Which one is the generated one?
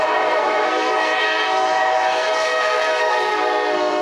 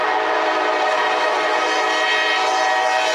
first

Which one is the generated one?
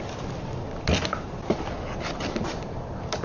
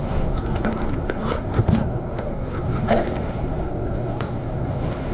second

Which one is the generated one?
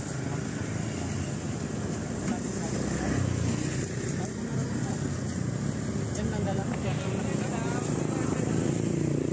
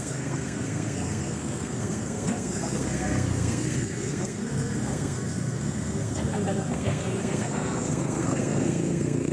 second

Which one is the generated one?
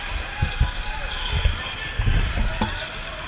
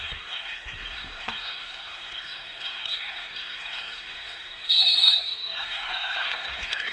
second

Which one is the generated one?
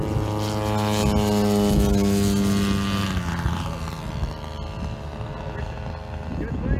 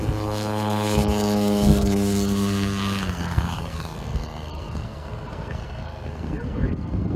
second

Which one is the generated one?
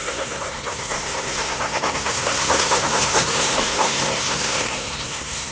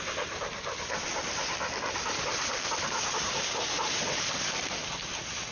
first